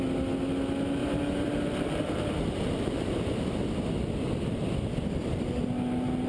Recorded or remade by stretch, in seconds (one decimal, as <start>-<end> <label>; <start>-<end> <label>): 0.0-1.0 recorded; 1.0-3.3 remade; 3.3-6.3 recorded